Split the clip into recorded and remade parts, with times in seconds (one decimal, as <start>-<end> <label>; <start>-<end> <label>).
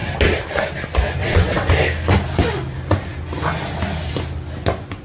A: 0.0-1.2 recorded; 1.2-1.7 remade; 1.7-5.0 recorded